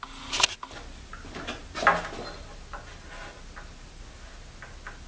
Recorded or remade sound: recorded